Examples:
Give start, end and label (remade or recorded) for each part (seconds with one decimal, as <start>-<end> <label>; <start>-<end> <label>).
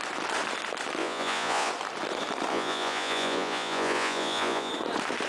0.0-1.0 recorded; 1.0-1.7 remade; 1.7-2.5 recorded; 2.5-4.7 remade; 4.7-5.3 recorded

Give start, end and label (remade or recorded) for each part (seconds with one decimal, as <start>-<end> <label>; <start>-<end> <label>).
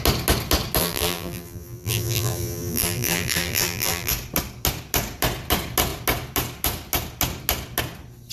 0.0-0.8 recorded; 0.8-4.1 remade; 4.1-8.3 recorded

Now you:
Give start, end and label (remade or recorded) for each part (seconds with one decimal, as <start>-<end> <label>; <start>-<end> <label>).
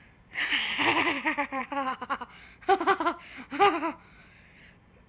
0.0-1.6 remade; 1.6-4.0 recorded; 4.0-5.1 remade